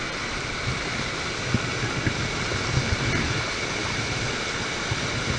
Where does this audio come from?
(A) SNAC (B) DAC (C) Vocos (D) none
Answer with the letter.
D